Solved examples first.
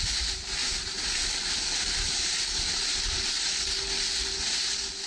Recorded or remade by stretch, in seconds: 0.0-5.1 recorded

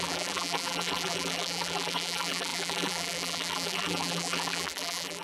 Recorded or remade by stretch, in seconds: 0.0-5.2 remade

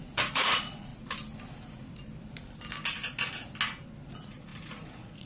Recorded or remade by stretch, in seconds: 0.0-0.9 remade; 0.9-4.1 recorded; 4.1-5.3 remade